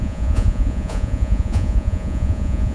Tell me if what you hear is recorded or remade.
remade